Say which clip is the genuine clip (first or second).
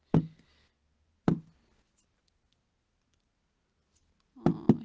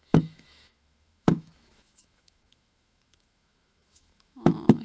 first